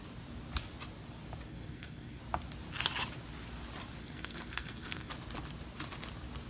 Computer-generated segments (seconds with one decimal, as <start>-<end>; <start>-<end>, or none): 1.5-2.2; 4.0-5.1